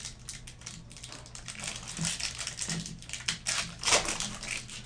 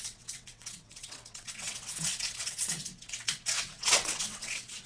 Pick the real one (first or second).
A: first